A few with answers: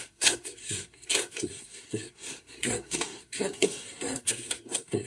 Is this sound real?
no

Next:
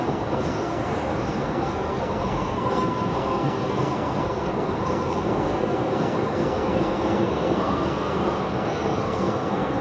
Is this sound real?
no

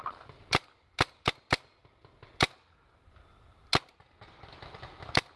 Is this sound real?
yes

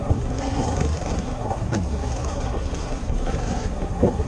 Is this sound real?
no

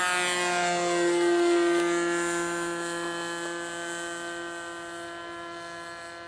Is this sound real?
yes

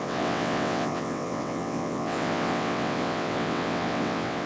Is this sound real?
no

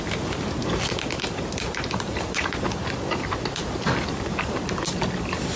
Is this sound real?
yes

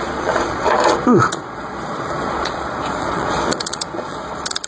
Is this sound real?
no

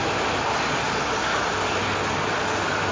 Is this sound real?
yes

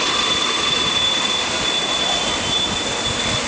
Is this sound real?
yes